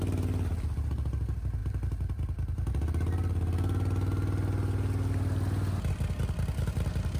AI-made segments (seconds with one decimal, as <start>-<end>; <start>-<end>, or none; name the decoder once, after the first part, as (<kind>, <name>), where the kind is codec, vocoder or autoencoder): none